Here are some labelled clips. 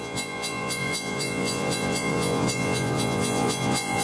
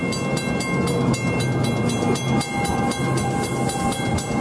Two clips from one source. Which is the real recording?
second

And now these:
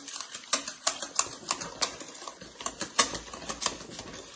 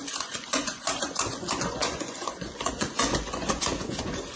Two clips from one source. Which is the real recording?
first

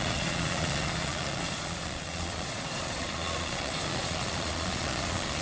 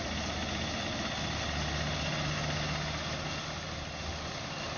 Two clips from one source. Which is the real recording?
second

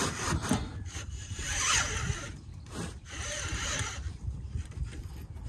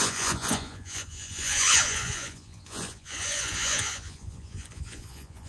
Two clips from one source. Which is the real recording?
first